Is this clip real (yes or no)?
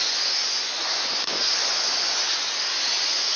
no